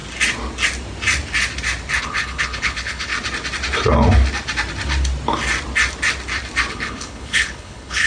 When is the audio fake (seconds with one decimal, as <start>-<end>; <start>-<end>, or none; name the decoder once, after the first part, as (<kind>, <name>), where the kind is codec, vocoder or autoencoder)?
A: 2.0-3.1 (codec, HILCodec); 6.7-8.1